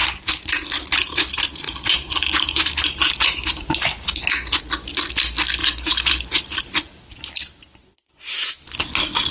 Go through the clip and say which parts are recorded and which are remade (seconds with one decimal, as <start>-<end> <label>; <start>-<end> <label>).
0.0-4.6 remade; 4.6-5.6 recorded; 5.6-6.6 remade; 6.6-9.3 recorded